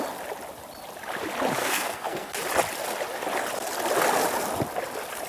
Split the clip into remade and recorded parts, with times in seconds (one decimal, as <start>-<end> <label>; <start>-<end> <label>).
0.0-1.6 recorded; 1.6-2.3 remade; 2.3-5.3 recorded